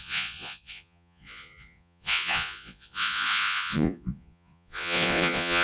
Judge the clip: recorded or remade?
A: remade